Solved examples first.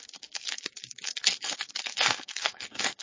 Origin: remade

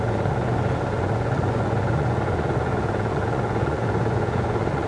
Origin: remade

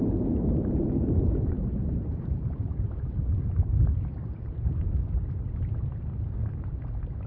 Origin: remade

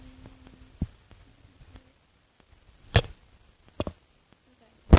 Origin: recorded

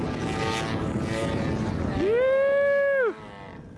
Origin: recorded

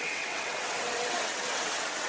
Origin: remade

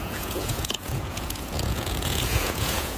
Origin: remade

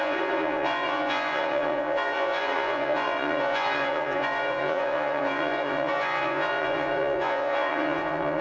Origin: remade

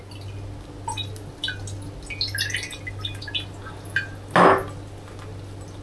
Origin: recorded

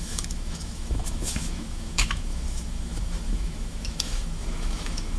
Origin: remade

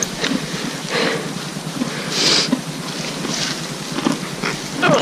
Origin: recorded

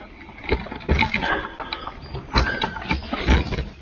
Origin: recorded